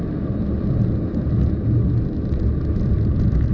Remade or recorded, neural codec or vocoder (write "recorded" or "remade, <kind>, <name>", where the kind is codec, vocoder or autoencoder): recorded